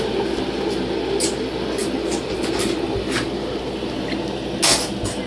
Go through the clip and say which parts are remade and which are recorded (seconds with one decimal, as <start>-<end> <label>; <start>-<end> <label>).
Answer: 0.0-5.3 recorded